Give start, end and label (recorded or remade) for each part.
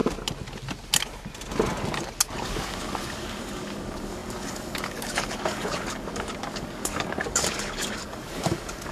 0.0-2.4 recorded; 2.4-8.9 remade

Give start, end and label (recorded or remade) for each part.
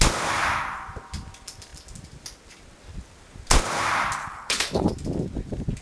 0.0-4.2 recorded; 4.2-4.9 remade; 4.9-5.8 recorded